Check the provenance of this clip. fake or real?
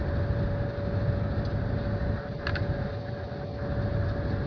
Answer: real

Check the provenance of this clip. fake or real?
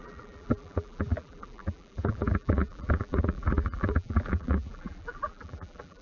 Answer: fake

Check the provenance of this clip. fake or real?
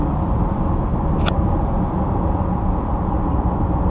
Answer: real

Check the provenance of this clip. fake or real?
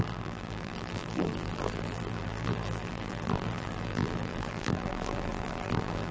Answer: fake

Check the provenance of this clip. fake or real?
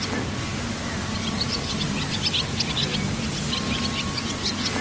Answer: real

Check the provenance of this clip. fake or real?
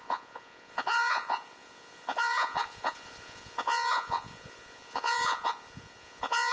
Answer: fake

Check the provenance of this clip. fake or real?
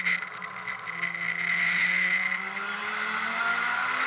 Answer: real